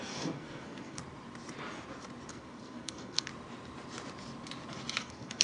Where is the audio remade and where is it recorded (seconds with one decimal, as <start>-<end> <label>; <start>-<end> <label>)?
0.0-1.0 remade; 1.0-2.3 recorded; 2.3-3.3 remade; 3.3-5.0 recorded; 5.0-5.4 remade